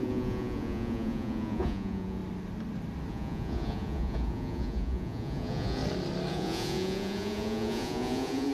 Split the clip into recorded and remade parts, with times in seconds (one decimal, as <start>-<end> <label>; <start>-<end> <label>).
0.0-2.2 remade; 2.2-3.1 recorded; 3.1-5.8 remade; 5.8-6.3 recorded; 6.3-8.5 remade